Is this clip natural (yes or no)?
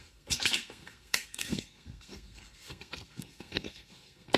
no